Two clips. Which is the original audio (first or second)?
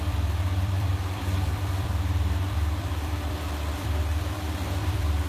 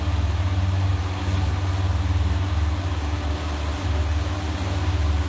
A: second